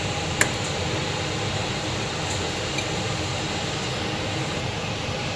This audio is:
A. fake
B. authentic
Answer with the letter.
B